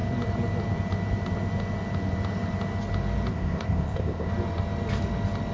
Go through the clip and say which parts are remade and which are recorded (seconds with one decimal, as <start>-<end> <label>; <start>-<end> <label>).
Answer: 0.0-3.3 recorded; 3.3-4.3 remade; 4.3-5.5 recorded